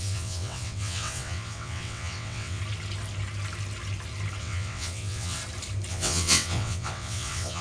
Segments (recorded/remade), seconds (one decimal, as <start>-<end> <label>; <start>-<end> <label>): 0.0-2.6 remade; 2.6-4.4 recorded; 4.4-5.4 remade; 5.4-5.9 recorded; 5.9-7.6 remade